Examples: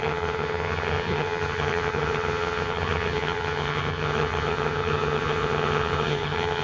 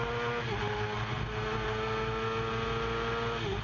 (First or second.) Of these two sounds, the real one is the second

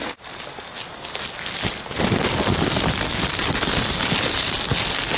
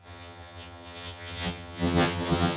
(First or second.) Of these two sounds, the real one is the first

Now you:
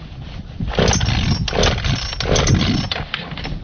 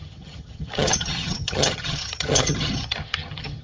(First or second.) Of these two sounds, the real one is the first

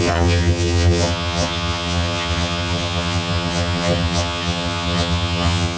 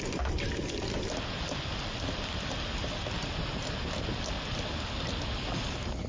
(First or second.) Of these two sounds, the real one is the second